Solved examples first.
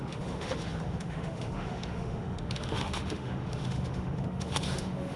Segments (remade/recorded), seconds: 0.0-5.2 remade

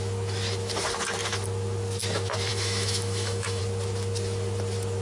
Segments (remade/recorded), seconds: 0.0-2.5 recorded; 2.5-3.6 remade; 3.6-5.0 recorded

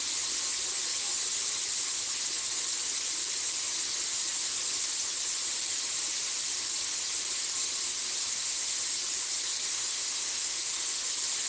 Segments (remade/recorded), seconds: 0.0-8.2 recorded; 8.2-8.8 remade; 8.8-9.7 recorded; 9.7-11.0 remade; 11.0-11.5 recorded

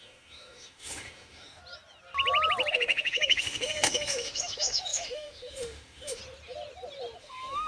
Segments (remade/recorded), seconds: 0.0-1.6 remade; 1.6-2.7 recorded; 2.7-6.2 remade; 6.2-7.2 recorded; 7.2-7.7 remade